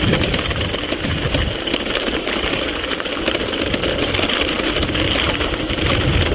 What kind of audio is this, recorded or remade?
recorded